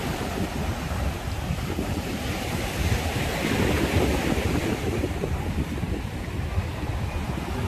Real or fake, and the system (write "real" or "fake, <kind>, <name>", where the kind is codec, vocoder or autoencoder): fake, vocoder, BigVGAN v2